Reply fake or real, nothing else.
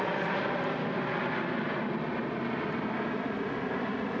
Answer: real